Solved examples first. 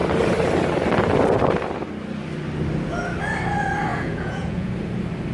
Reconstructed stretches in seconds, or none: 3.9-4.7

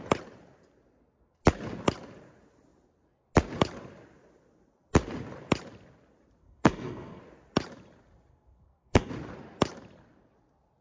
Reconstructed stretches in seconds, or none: 6.4-7.2; 8.3-9.1

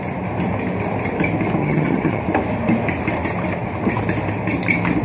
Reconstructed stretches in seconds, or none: 1.6-2.2

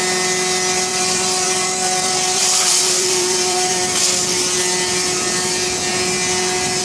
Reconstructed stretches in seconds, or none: 0.9-4.0

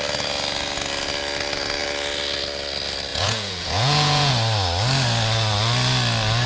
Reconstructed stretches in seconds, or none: 3.1-4.3

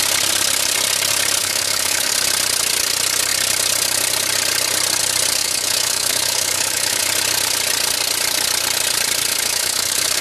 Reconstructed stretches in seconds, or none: 1.4-2.1; 5.4-7.0; 9.3-10.2

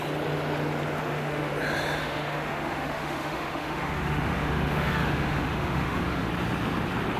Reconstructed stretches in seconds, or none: 1.0-1.5; 2.0-6.3